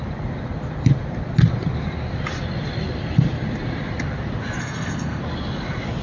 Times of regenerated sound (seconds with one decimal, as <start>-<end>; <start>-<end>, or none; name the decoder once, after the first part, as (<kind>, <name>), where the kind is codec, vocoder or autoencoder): 4.6-5.2 (codec, SNAC)